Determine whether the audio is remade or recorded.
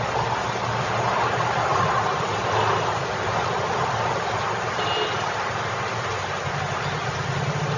recorded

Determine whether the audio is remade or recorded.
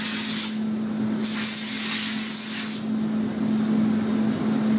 recorded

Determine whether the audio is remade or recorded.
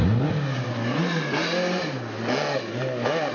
recorded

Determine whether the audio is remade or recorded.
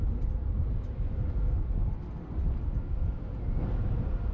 recorded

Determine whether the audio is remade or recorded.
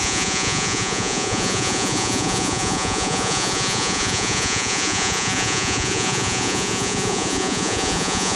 remade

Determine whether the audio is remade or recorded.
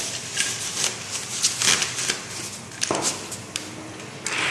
recorded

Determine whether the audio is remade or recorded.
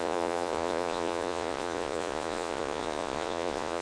remade